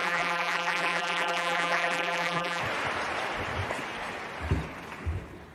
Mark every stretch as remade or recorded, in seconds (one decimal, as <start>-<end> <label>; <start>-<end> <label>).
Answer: 0.0-2.6 remade; 2.6-5.5 recorded